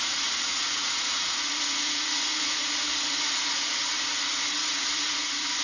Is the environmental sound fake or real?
fake